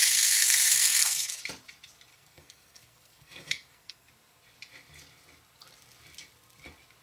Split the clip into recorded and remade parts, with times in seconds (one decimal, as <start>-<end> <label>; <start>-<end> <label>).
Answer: 0.0-1.4 remade; 1.4-2.1 recorded; 2.1-4.1 remade; 4.1-7.0 recorded